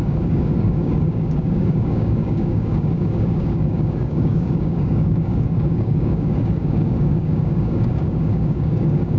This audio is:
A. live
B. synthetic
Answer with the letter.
B